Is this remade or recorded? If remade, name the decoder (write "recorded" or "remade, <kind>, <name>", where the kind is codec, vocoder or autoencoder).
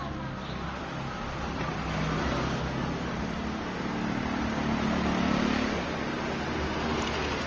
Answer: recorded